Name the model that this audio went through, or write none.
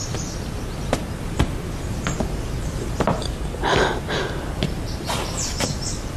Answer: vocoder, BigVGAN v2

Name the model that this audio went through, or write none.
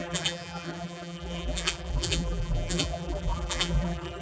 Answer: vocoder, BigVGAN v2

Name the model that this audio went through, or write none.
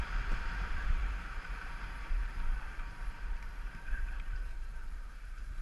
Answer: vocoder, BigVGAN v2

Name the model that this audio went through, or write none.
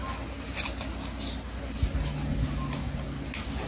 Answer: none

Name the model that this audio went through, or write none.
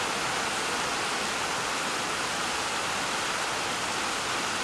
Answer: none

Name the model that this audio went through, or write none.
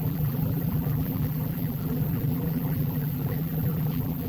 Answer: vocoder, BigVGAN v2